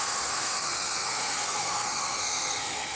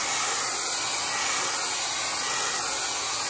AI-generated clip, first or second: first